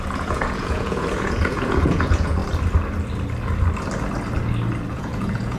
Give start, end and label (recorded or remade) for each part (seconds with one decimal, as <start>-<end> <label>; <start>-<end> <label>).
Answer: 0.0-2.4 remade; 2.4-4.9 recorded; 4.9-5.6 remade